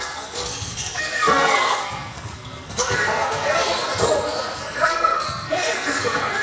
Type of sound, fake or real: fake